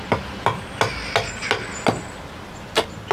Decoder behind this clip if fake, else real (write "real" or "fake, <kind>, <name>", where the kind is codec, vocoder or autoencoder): real